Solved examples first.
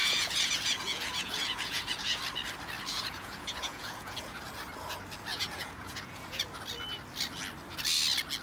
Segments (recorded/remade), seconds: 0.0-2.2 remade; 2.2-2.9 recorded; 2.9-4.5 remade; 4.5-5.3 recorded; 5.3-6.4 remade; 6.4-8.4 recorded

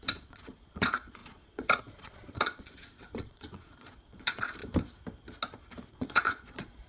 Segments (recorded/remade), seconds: 0.0-4.6 remade; 4.6-5.9 recorded; 5.9-6.9 remade

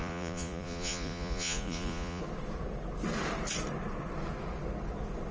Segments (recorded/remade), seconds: 0.0-2.2 remade; 2.2-5.3 recorded

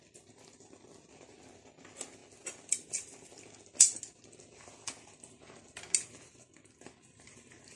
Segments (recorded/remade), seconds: 0.0-7.8 recorded

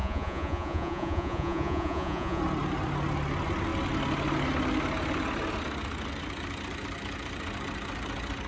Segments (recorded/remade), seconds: 0.0-2.4 remade; 2.4-8.5 recorded

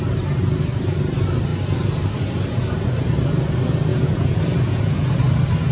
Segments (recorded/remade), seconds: 0.0-3.9 recorded; 3.9-5.2 remade; 5.2-5.7 recorded

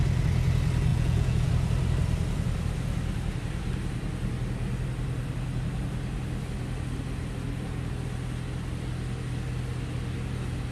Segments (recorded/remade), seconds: 0.0-0.9 recorded; 0.9-1.5 remade; 1.5-10.7 recorded

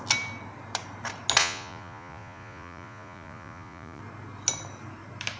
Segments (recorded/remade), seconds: 0.0-1.4 recorded; 1.4-4.0 remade; 4.0-5.4 recorded